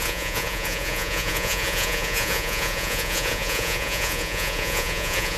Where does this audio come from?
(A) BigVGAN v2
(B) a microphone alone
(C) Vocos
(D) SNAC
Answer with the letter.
C